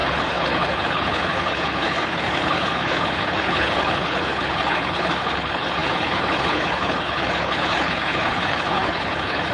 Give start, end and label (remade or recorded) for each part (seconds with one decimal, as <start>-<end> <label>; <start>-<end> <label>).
0.0-9.5 remade